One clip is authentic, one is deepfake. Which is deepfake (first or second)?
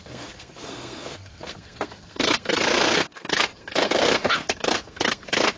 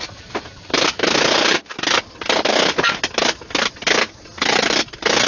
first